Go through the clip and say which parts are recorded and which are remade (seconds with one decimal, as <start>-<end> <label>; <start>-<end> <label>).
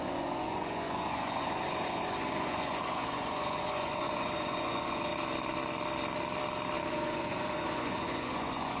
0.0-5.1 remade; 5.1-6.9 recorded; 6.9-8.8 remade